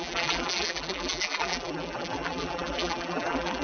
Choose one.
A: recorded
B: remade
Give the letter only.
B